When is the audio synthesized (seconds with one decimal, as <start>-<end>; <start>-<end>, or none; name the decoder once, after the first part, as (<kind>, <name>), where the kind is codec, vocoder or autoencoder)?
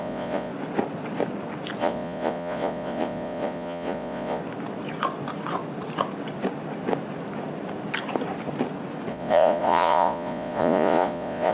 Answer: 0.0-0.5 (vocoder, Vocos); 1.8-4.4; 9.1-11.5